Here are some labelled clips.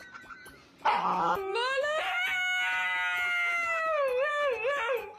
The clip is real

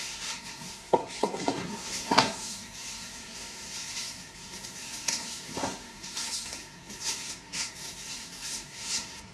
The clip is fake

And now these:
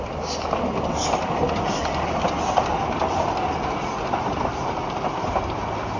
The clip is real